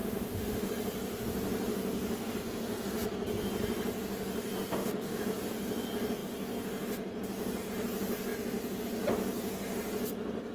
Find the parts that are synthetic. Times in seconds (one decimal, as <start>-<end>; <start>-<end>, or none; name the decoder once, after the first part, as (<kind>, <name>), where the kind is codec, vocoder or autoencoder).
0.0-0.7 (autoencoder, DAC-VAE); 4.7-5.2